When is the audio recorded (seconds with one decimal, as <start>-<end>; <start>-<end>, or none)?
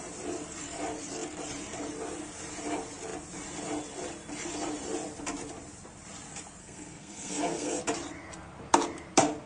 0.0-6.6; 7.8-9.5